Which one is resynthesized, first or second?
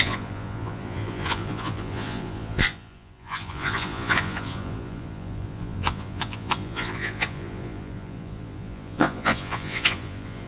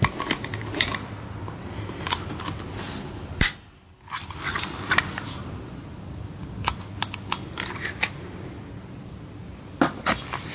first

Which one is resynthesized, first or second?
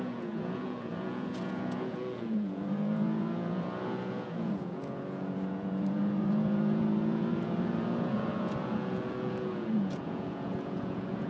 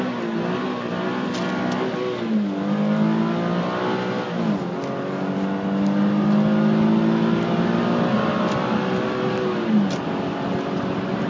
first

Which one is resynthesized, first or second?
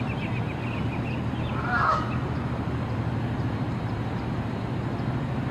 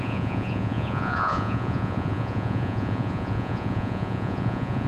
second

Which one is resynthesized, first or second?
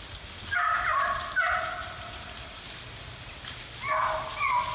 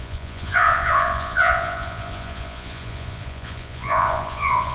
second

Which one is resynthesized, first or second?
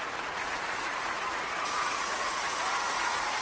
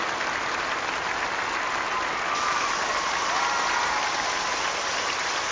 first